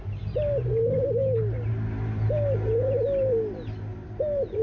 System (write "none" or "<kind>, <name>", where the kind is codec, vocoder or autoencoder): none